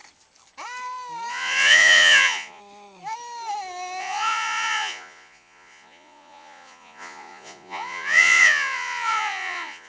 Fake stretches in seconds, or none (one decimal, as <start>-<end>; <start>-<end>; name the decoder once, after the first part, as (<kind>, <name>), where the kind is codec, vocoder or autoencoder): 1.3-2.6 (vocoder, Vocos); 4.0-9.9